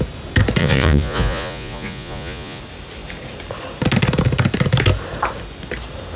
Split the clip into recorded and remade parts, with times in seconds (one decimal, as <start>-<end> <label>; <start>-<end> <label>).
0.0-0.6 recorded; 0.6-2.6 remade; 2.6-6.2 recorded